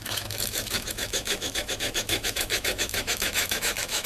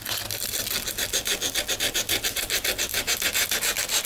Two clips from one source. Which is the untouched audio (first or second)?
second